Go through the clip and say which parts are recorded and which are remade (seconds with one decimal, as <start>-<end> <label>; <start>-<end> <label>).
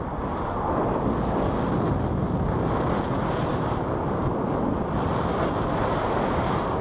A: 0.0-6.8 recorded